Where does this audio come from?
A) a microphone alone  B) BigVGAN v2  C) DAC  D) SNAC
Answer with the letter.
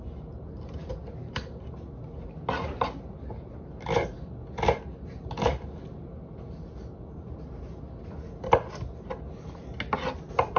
A